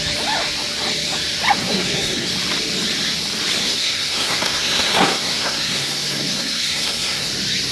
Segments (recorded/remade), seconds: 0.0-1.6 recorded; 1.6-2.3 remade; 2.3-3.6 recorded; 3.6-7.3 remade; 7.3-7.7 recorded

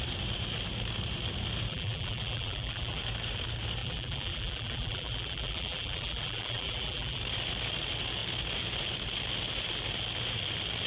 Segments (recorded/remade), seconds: 0.0-1.7 recorded; 1.7-3.0 remade; 3.0-3.8 recorded; 3.8-7.2 remade; 7.2-10.9 recorded

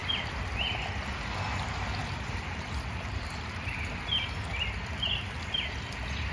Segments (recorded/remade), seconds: 0.0-0.8 remade; 0.8-2.0 recorded; 2.0-3.8 remade; 3.8-6.3 recorded

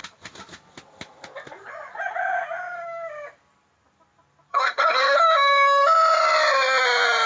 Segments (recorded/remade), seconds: 0.0-4.5 recorded; 4.5-5.2 remade; 5.2-7.3 recorded

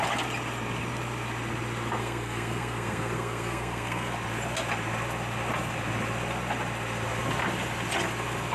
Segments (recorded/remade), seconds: 0.0-2.0 recorded; 2.0-4.1 remade; 4.1-8.5 recorded

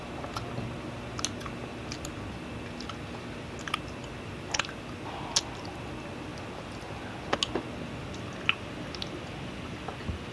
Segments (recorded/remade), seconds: 0.0-10.3 recorded